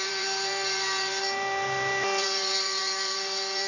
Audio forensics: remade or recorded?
remade